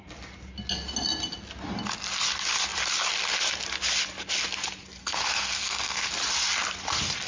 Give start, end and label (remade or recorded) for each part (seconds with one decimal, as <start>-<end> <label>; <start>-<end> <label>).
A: 0.0-5.0 recorded; 5.0-6.1 remade; 6.1-7.3 recorded